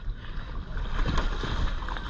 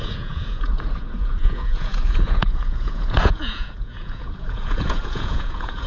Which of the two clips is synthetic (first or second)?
second